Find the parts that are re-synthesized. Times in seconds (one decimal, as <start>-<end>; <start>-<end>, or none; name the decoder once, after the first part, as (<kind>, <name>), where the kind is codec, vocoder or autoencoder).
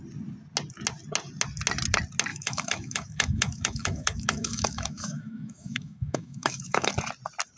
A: 2.3-6.9 (autoencoder, DAC-VAE)